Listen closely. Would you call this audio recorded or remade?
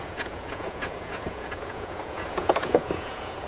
remade